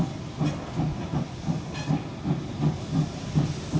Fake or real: real